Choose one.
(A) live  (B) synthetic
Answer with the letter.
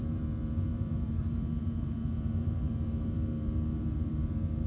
B